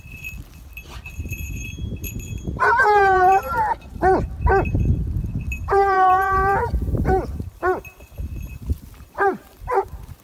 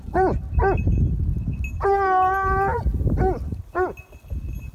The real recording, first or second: second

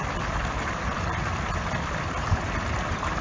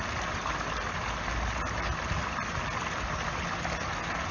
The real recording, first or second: second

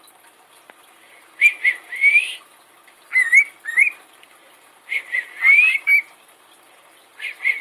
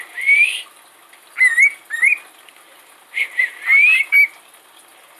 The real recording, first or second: second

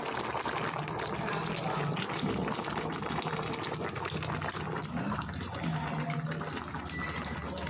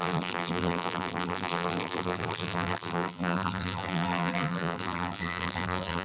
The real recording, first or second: first